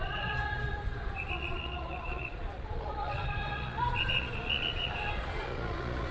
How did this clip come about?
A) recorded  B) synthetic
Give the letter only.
B